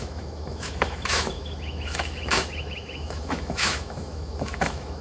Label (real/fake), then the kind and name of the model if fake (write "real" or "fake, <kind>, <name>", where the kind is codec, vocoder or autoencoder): fake, autoencoder, DAC-VAE